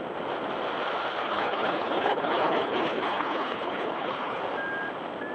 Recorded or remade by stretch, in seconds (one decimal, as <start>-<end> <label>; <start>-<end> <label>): 0.0-1.2 recorded; 1.2-4.4 remade; 4.4-5.3 recorded

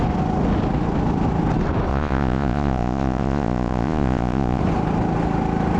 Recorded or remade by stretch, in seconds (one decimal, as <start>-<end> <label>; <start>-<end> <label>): 0.0-1.9 recorded; 1.9-4.6 remade; 4.6-5.8 recorded

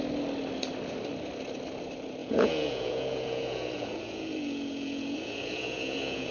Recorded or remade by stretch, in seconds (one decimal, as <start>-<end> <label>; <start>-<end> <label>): 0.0-2.2 recorded; 2.2-6.3 remade

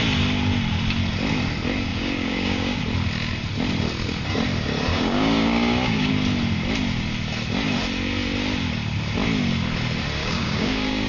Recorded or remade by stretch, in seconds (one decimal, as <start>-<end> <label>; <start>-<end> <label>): 0.0-1.9 recorded; 1.9-2.8 remade; 2.8-4.9 recorded; 4.9-6.1 remade; 6.1-10.2 recorded; 10.2-11.1 remade

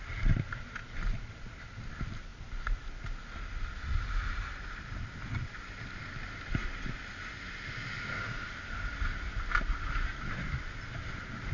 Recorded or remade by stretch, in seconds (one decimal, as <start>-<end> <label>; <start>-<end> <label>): 0.0-11.5 recorded

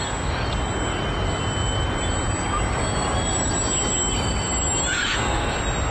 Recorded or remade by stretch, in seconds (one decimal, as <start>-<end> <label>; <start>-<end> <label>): 0.0-5.9 recorded